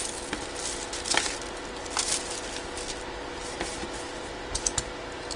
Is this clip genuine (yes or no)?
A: yes